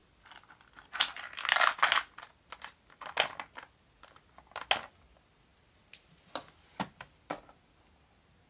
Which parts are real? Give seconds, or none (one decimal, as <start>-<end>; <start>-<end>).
0.0-8.5